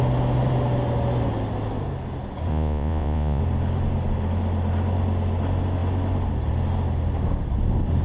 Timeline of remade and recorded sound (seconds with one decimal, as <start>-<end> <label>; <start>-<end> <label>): 0.0-2.5 recorded; 2.5-3.4 remade; 3.4-8.0 recorded